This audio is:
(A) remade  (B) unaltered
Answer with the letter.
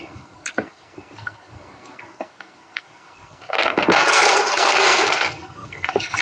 A